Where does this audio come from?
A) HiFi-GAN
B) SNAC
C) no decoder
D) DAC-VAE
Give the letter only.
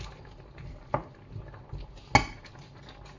C